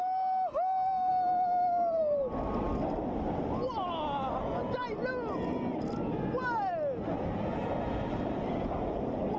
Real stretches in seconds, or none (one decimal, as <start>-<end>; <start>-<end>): 0.0-9.4